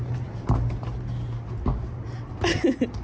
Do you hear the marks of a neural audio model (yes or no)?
no